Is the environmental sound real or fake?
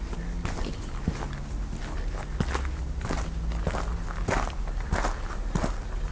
real